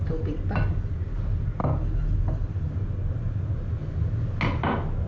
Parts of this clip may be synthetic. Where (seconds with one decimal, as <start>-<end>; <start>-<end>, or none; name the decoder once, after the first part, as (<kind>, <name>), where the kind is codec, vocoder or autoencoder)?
none